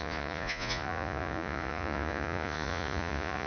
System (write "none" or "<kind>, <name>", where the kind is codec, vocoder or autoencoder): vocoder, Vocos